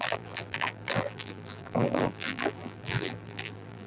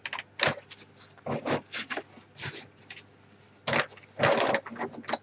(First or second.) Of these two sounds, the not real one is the first